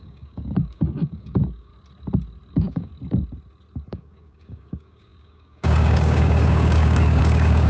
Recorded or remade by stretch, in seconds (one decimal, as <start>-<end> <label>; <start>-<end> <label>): 0.0-1.7 remade; 1.7-2.5 recorded; 2.5-2.9 remade; 2.9-3.9 recorded; 3.9-7.7 remade